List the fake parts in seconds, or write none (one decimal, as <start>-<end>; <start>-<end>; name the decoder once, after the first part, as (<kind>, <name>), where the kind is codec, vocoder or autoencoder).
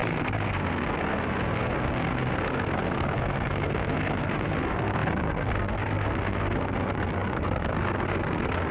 0.0-8.7 (codec, SNAC)